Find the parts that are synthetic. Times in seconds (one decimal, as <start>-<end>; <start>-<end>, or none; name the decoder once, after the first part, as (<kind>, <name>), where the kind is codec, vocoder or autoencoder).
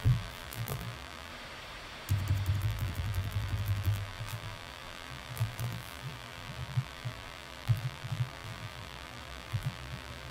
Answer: 0.0-1.3 (vocoder, BigVGAN v2); 2.6-10.3